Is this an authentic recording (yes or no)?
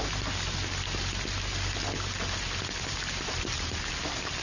yes